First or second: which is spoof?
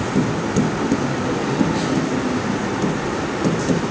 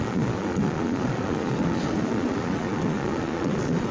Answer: second